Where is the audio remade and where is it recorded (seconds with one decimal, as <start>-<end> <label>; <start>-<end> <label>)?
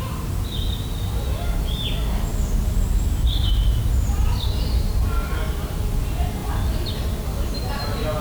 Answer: 0.0-8.2 recorded